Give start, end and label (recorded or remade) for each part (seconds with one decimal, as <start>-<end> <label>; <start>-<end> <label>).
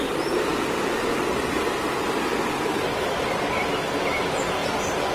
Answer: 0.0-5.1 recorded